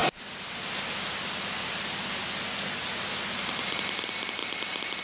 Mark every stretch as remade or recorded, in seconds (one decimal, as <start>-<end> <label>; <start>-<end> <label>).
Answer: 0.0-5.0 recorded